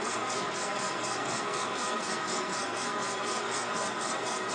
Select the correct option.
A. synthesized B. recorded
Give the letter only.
A